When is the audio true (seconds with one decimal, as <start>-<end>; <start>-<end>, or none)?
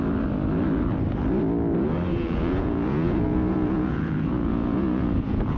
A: 0.0-2.1